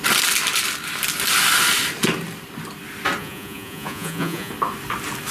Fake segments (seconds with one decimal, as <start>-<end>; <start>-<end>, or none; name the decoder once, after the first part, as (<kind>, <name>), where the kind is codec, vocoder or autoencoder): 3.2-4.5 (vocoder, Vocos)